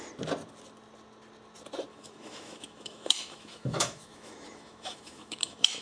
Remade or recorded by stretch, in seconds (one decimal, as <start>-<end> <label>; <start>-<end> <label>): 0.0-1.9 recorded; 1.9-5.8 remade